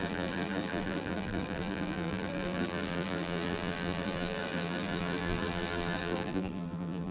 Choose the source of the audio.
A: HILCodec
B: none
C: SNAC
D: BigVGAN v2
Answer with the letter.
D